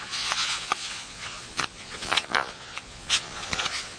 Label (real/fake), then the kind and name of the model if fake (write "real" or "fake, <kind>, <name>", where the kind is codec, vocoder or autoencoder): fake, vocoder, Vocos